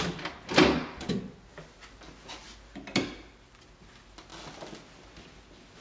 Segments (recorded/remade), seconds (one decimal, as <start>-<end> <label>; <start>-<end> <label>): 0.0-5.8 recorded